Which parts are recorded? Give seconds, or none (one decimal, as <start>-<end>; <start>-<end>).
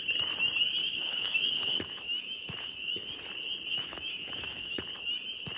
0.0-0.8; 2.9-3.7; 4.8-5.6